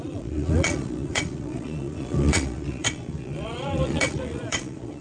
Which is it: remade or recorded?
remade